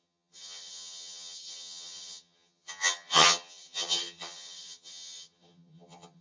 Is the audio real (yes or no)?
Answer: no